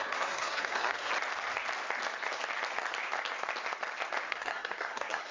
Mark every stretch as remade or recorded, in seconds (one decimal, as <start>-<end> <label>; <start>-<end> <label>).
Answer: 0.0-1.1 remade; 1.1-4.3 recorded; 4.3-5.3 remade